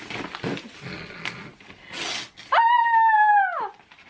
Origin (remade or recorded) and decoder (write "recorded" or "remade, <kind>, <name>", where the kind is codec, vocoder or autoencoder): recorded